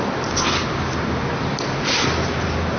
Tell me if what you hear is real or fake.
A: real